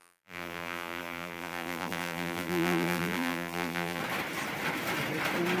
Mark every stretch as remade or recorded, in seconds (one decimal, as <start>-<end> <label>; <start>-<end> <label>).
0.0-4.0 remade; 4.0-5.6 recorded